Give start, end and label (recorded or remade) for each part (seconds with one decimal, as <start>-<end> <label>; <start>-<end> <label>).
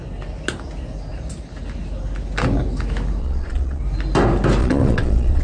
0.0-3.2 recorded; 3.2-3.8 remade; 3.8-4.6 recorded; 4.6-5.4 remade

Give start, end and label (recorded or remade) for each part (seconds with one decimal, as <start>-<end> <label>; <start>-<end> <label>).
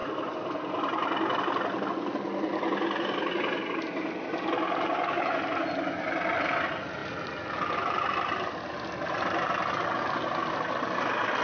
0.0-11.4 recorded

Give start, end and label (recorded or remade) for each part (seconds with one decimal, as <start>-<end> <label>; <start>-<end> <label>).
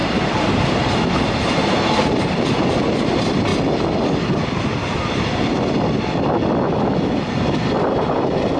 0.0-3.5 remade; 3.5-7.9 recorded; 7.9-8.6 remade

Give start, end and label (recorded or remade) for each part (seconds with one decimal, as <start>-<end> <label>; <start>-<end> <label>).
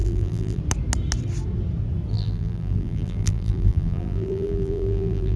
0.0-0.6 remade; 0.6-2.1 recorded; 2.1-5.4 remade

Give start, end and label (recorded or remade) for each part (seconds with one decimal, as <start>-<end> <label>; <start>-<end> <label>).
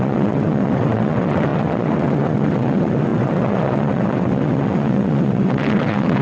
0.0-6.2 remade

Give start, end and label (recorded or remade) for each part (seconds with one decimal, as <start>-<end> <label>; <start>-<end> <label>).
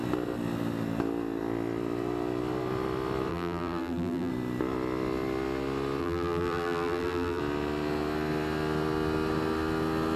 0.0-3.3 recorded; 3.3-4.3 remade; 4.3-6.0 recorded; 6.0-7.4 remade; 7.4-10.2 recorded